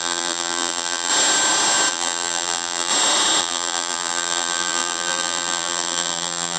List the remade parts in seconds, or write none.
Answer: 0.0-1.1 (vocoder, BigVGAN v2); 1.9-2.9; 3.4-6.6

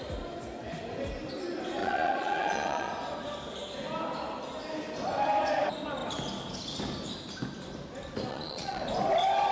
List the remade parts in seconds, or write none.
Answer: 1.8-2.9 (vocoder, Vocos); 8.3-8.8

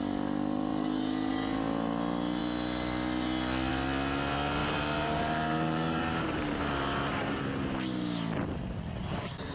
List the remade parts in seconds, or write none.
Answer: 4.6-7.4 (vocoder, BigVGAN v2)